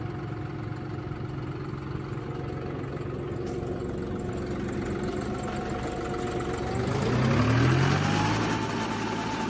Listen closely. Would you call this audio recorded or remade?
recorded